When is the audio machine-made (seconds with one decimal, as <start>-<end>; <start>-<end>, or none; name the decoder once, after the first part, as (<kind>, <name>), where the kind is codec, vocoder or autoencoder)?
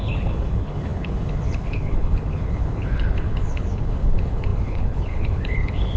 0.0-6.0 (codec, HILCodec)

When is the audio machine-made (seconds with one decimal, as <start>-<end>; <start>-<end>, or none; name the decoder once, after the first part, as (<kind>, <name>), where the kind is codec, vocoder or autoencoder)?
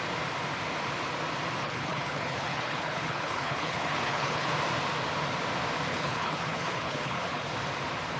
1.6-4.5 (codec, HILCodec); 5.9-7.5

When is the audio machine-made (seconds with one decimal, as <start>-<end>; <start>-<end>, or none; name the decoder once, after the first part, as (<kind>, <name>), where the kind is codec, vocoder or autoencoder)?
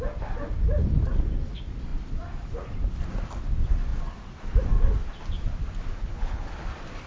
5.9-6.5 (codec, HILCodec)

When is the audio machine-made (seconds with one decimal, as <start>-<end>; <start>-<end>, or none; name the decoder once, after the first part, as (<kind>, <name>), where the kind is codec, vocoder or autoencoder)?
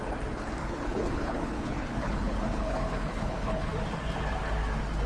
0.6-3.7 (codec, HILCodec)